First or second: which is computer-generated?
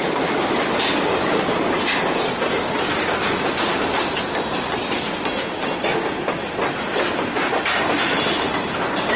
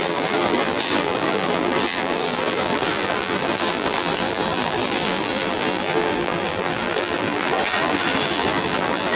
second